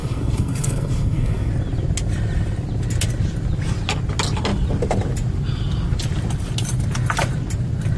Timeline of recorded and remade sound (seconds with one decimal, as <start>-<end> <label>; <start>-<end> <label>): 0.0-1.5 remade; 1.5-8.0 recorded